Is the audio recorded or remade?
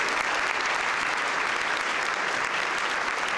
recorded